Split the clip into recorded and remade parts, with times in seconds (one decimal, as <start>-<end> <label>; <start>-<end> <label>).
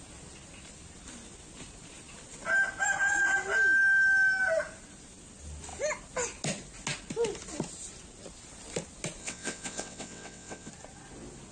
0.0-9.2 recorded; 9.2-10.7 remade; 10.7-11.5 recorded